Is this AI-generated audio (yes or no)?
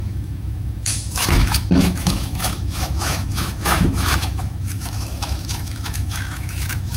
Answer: yes